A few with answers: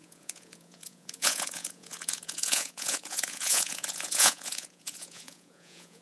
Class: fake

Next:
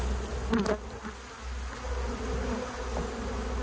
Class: real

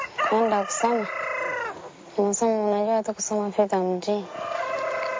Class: real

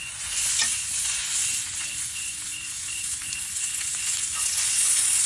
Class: fake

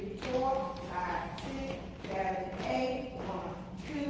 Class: real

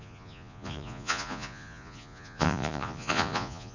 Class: fake